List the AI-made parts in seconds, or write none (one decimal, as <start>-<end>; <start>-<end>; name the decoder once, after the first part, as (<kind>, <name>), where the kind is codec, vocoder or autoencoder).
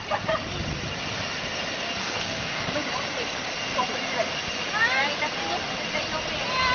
2.0-2.7 (codec, DAC)